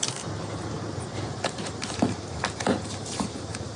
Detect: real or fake fake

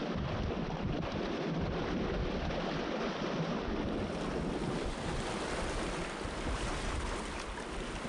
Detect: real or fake real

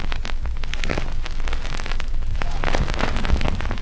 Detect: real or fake real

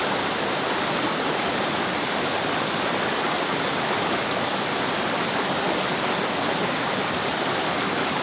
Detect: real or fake real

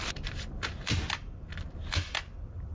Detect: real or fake fake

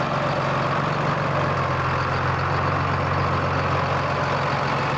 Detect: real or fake real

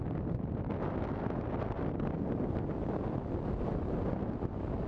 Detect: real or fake real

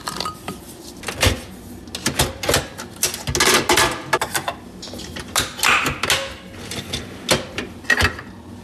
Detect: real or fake real